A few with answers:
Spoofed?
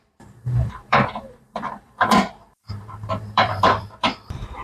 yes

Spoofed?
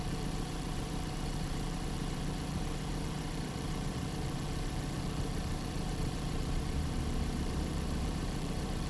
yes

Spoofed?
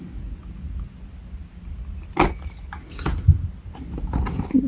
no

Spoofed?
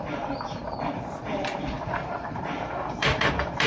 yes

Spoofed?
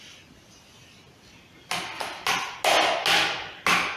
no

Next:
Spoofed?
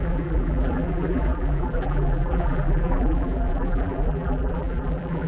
yes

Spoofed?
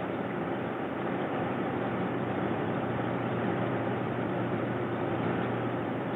yes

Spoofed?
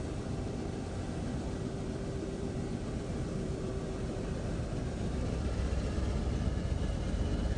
yes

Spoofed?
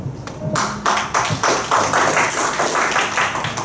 no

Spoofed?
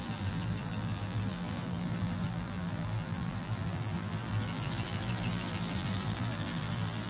yes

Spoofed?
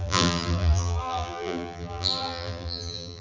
yes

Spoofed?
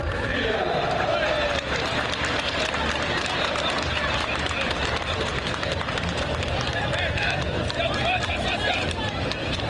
yes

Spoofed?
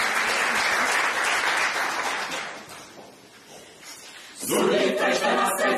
no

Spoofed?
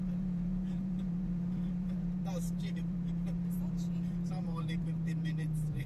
yes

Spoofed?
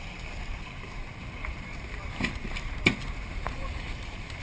yes